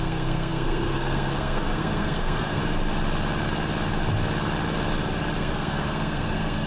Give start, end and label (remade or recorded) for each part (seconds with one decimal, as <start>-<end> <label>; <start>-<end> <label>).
0.0-2.6 remade; 2.6-5.4 recorded; 5.4-6.7 remade